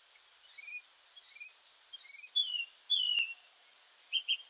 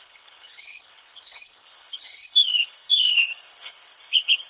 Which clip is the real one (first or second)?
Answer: first